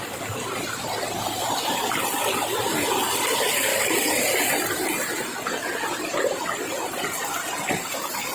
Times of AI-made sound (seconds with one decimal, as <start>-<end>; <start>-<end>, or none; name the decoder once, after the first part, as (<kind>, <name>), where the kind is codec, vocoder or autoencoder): 3.7-7.0 (vocoder, BigVGAN v2)